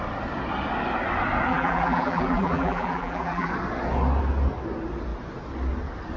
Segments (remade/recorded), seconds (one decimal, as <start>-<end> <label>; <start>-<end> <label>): 0.0-1.5 recorded; 1.5-3.5 remade; 3.5-6.2 recorded